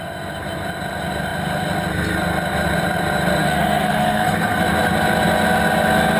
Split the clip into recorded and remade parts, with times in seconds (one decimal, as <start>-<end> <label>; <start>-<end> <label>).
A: 0.0-3.4 recorded; 3.4-4.6 remade; 4.6-6.2 recorded